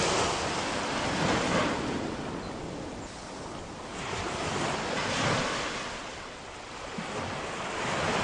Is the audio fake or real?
real